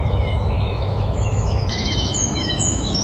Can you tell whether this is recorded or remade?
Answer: remade